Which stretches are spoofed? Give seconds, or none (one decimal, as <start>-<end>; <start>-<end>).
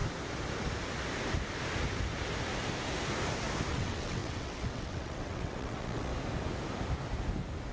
3.7-6.1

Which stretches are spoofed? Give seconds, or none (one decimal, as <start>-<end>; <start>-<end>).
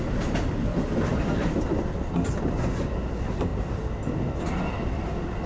none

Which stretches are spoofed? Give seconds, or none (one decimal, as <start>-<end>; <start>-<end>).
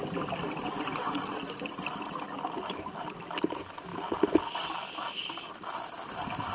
none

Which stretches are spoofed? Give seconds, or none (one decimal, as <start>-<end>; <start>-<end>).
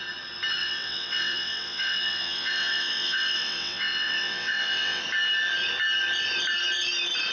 0.6-5.0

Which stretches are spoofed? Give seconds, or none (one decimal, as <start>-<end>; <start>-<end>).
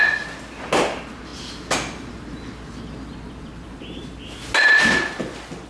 none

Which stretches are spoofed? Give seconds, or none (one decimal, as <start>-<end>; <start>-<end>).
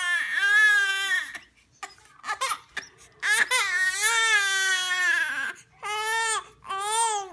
none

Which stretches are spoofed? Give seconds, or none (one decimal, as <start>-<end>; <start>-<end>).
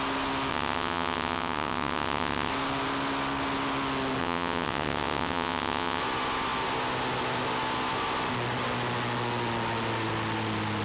0.5-2.5; 4.2-6.0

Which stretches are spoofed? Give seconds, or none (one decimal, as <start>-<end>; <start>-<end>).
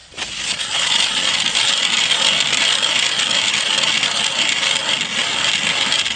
none